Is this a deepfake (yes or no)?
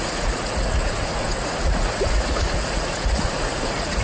yes